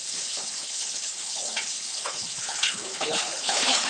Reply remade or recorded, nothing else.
remade